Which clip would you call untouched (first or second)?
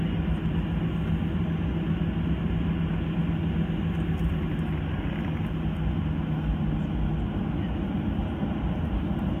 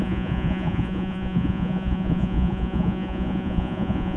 first